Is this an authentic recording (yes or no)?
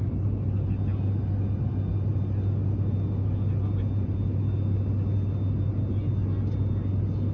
yes